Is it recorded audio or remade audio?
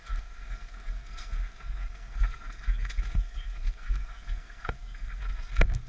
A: remade